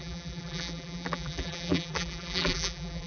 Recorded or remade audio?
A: remade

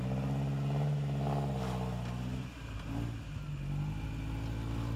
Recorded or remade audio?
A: recorded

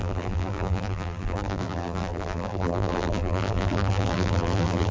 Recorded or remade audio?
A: remade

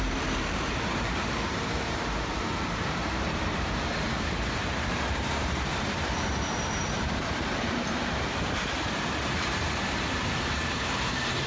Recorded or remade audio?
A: remade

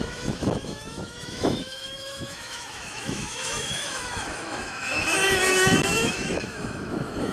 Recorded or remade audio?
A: remade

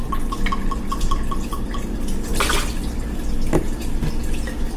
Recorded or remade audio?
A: recorded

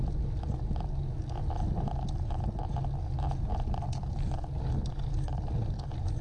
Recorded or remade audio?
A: recorded